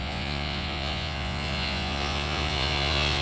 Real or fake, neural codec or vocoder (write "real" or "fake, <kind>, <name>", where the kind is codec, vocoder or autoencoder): fake, vocoder, Vocos